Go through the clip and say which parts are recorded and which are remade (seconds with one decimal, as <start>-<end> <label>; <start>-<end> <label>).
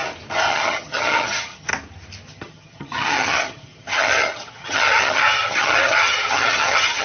0.0-0.5 recorded; 0.5-1.7 remade; 1.7-2.3 recorded; 2.3-7.0 remade